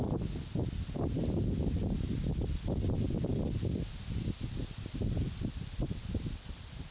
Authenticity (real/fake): real